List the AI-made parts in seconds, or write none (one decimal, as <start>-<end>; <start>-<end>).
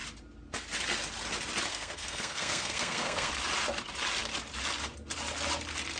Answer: 1.7-3.3